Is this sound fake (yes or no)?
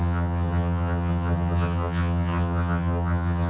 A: yes